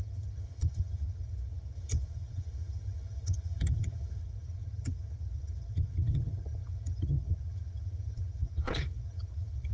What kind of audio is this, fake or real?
fake